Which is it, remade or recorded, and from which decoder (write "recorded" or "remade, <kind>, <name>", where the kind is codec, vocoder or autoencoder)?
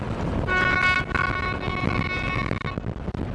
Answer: recorded